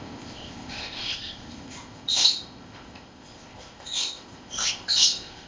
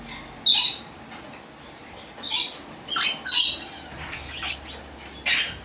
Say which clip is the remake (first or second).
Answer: first